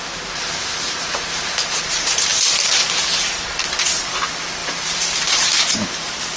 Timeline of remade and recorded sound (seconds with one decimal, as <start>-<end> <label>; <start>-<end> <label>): 0.0-2.3 remade; 2.3-3.7 recorded; 3.7-6.4 remade